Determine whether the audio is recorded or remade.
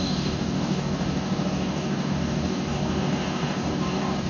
remade